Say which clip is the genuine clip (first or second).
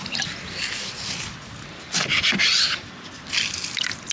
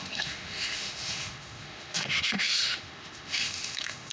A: first